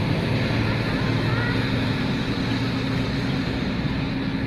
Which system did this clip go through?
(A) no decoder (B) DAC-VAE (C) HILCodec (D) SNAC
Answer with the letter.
A